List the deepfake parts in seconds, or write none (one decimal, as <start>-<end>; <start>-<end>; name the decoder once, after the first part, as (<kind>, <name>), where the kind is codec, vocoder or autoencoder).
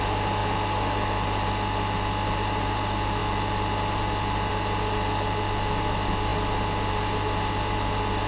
none